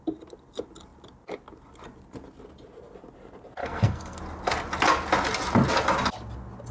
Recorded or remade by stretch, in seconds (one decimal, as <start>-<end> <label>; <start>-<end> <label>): 0.0-3.6 recorded; 3.6-4.2 remade; 4.2-6.7 recorded